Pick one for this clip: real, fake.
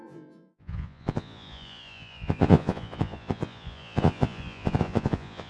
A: fake